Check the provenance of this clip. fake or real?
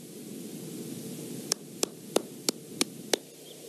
real